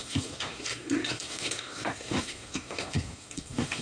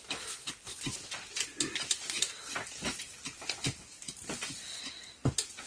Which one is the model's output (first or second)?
first